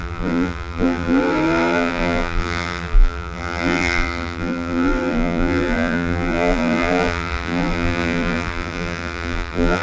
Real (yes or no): no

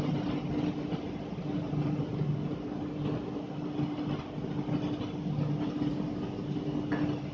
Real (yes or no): yes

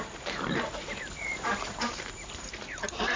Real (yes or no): no